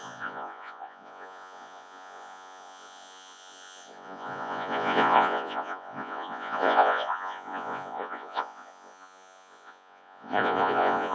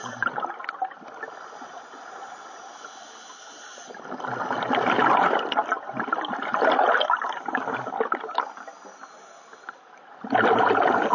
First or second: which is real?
second